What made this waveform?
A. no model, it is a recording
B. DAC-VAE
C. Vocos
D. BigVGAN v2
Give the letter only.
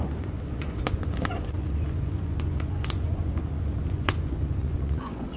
C